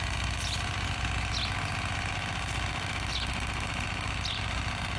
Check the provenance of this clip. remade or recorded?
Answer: recorded